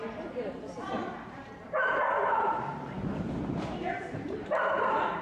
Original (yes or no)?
no